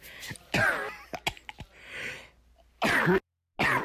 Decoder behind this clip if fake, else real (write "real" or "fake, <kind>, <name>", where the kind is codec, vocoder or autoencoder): real